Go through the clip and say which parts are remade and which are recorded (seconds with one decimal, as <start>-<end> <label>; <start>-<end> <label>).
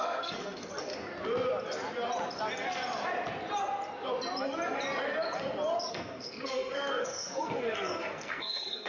0.0-0.9 remade; 0.9-5.9 recorded; 5.9-8.9 remade